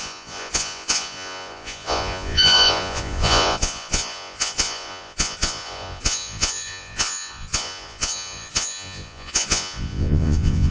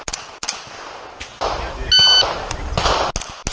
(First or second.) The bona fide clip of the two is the second